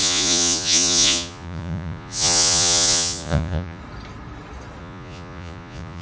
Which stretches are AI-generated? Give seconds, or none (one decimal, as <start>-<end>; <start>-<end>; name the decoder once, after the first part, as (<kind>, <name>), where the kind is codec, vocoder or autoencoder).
0.0-3.8 (vocoder, Vocos); 4.8-6.0